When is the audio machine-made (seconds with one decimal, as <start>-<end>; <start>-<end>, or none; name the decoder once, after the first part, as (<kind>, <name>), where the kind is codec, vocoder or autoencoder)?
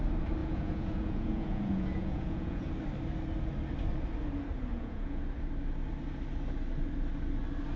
0.4-2.7 (vocoder, Vocos); 4.7-5.2